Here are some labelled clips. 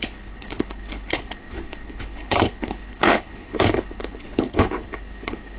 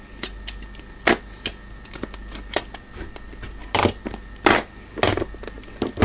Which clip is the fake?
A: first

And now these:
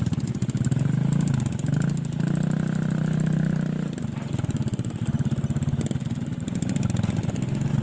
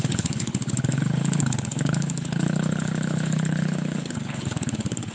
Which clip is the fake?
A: second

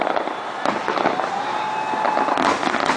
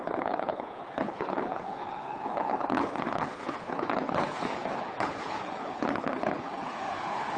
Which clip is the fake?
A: second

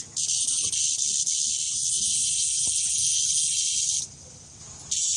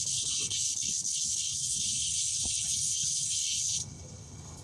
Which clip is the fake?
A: second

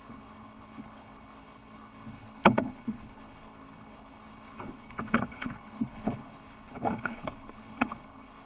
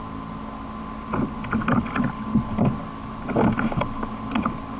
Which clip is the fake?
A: first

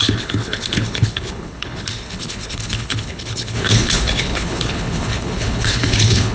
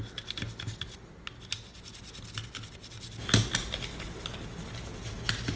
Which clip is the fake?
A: first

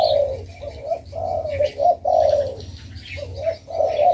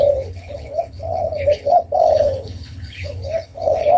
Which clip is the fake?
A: second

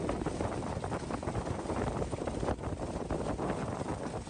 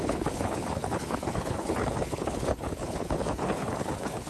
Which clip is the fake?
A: second